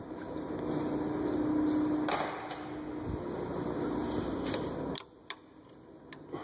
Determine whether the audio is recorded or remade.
recorded